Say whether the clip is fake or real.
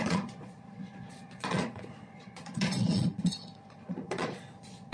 fake